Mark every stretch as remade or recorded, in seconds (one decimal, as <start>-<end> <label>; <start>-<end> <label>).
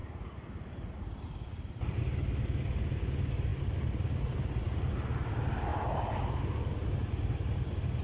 0.0-2.0 remade; 2.0-3.5 recorded; 3.5-4.2 remade; 4.2-5.7 recorded; 5.7-6.4 remade; 6.4-8.0 recorded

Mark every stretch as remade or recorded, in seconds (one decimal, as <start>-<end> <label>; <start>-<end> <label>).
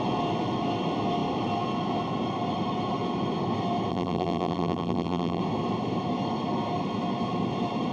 0.0-3.9 recorded; 3.9-5.4 remade; 5.4-7.9 recorded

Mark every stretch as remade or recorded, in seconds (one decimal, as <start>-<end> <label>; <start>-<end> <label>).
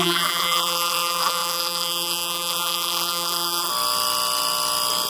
0.0-3.7 remade; 3.7-5.1 recorded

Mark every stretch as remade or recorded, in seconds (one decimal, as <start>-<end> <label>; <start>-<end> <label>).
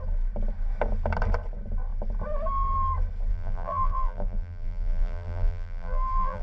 0.0-3.3 recorded; 3.3-6.4 remade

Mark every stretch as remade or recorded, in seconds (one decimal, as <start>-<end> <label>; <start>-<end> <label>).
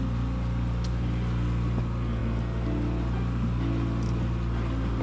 0.0-5.0 recorded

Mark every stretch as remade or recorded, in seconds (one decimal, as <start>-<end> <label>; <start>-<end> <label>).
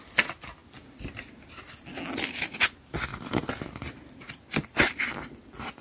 0.0-0.6 recorded; 0.6-1.4 remade; 1.4-3.1 recorded; 3.1-4.3 remade; 4.3-5.8 recorded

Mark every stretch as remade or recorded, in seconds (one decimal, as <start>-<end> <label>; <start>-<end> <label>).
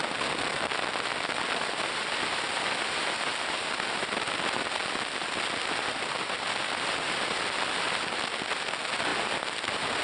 0.0-10.0 recorded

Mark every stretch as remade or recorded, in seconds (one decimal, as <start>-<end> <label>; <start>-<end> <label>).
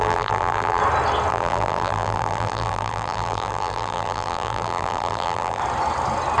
0.0-0.8 remade; 0.8-1.3 recorded; 1.3-5.6 remade; 5.6-6.4 recorded